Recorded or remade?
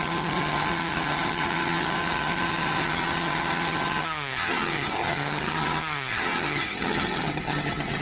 remade